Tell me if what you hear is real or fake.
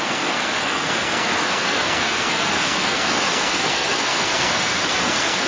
fake